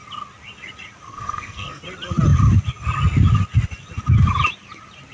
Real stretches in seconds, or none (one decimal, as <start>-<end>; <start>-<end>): 0.0-1.1; 1.8-5.1